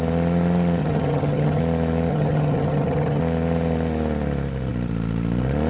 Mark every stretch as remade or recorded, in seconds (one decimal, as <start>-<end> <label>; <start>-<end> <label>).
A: 0.0-0.8 recorded; 0.8-1.6 remade; 1.6-2.1 recorded; 2.1-3.2 remade; 3.2-5.7 recorded